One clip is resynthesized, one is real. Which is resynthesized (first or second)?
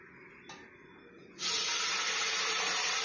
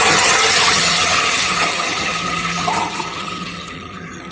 second